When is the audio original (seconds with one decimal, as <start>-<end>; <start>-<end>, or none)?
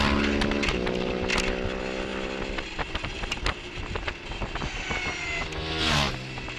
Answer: 0.0-6.6